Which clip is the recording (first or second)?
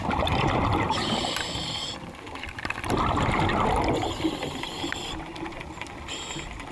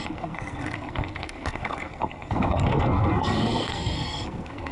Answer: first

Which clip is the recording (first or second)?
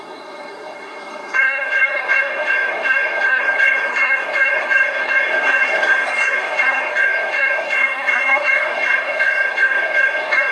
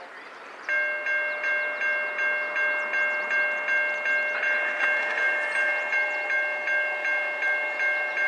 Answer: second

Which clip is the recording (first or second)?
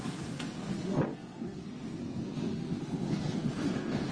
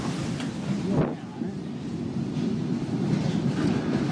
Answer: second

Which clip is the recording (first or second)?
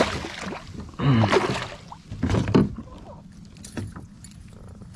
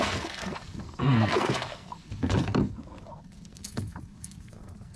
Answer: first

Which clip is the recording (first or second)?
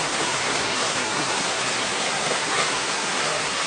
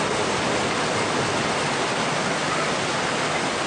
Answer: second